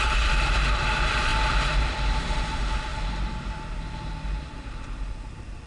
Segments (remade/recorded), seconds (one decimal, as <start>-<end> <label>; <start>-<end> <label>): 0.0-1.3 remade; 1.3-2.4 recorded; 2.4-2.9 remade; 2.9-4.4 recorded; 4.4-5.7 remade